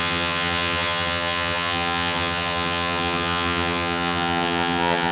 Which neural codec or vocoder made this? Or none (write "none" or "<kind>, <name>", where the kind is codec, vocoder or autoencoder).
vocoder, HiFi-GAN